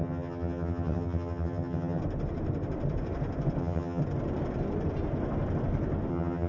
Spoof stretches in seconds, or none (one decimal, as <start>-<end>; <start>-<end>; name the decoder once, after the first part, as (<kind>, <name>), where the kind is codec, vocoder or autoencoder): 0.0-2.0 (vocoder, HiFi-GAN); 3.6-4.0; 6.1-6.5